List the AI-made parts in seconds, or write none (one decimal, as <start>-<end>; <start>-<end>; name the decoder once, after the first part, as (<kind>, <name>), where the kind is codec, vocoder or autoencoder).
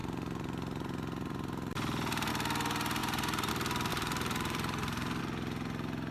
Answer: 0.0-2.3 (vocoder, BigVGAN v2); 3.0-3.5; 3.9-5.2